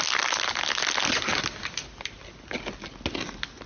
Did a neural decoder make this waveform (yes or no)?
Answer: no